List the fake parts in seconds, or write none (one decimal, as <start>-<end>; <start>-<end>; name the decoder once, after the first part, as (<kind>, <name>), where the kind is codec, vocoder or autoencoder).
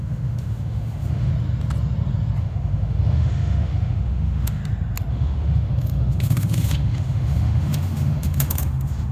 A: 0.0-1.3 (autoencoder, DAC-VAE); 2.4-4.6; 5.1-9.1